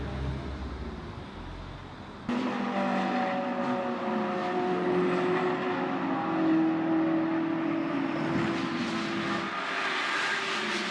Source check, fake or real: real